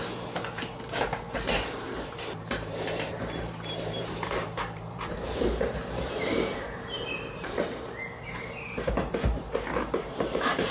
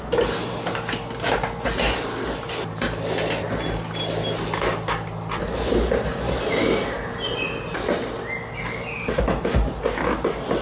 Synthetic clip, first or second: first